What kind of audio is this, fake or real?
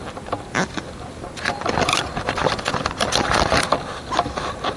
real